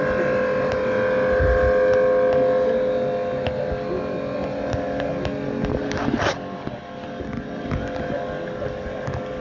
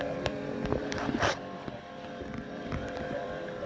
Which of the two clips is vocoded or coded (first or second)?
second